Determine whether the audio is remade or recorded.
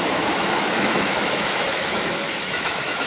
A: remade